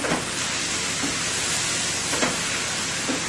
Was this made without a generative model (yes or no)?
yes